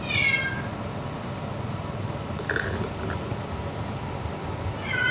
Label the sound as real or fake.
real